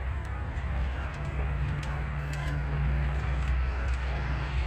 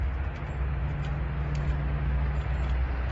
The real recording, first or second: second